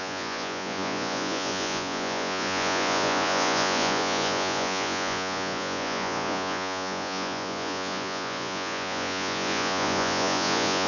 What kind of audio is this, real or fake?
fake